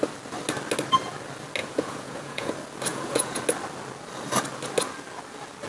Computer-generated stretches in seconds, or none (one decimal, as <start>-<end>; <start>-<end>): 1.6-2.5; 2.9-3.4